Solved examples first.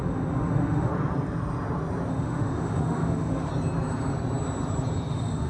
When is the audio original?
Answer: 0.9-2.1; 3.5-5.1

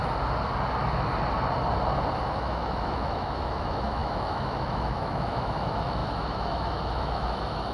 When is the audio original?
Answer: 0.0-2.2

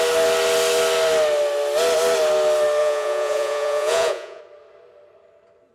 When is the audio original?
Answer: 0.0-2.8; 4.4-5.7

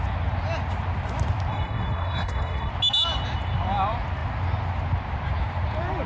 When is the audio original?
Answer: 0.0-1.5; 2.7-6.1

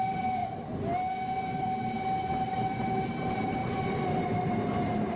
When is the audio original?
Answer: 0.4-1.3; 3.6-4.6

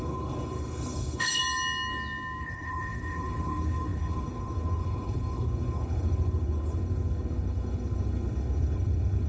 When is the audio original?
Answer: 1.4-2.4

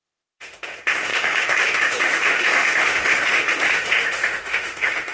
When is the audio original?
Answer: none

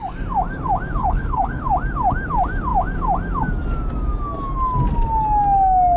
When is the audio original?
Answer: 0.0-1.0; 1.6-6.0